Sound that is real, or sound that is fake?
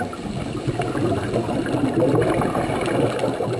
real